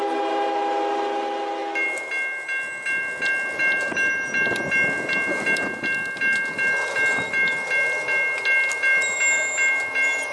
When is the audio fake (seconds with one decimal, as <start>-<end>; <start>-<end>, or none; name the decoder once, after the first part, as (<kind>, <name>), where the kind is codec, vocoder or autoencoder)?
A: none